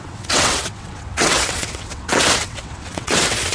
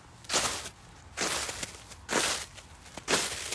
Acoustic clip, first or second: second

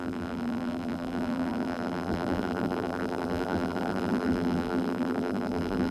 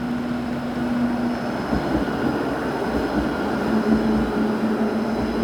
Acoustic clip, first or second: second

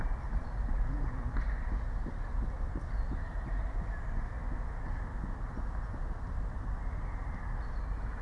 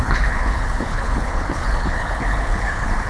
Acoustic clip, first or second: first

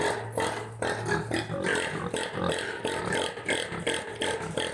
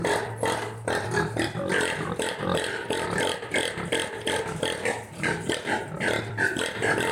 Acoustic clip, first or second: first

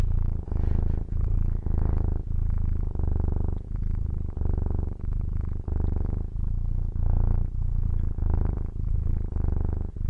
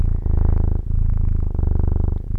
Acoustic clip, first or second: second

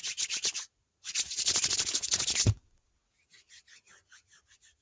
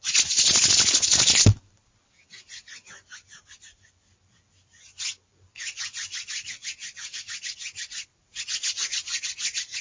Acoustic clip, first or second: second